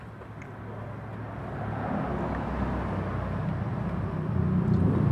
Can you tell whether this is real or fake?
real